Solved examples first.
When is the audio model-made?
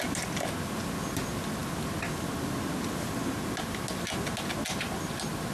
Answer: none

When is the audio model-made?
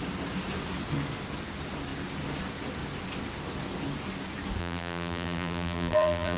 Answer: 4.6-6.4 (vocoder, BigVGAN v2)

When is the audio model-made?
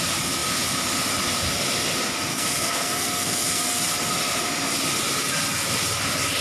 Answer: 2.3-3.8 (codec, SNAC)